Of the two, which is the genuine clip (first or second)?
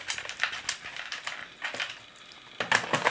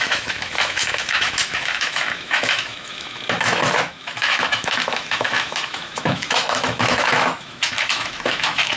first